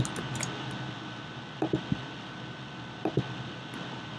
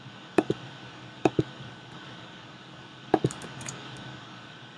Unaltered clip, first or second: first